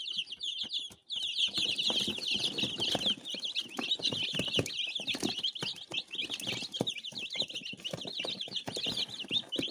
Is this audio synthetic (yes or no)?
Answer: no